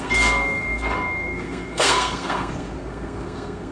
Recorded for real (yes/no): no